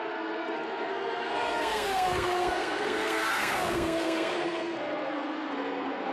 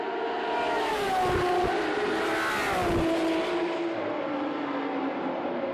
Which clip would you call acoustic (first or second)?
second